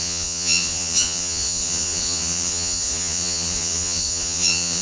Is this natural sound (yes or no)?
no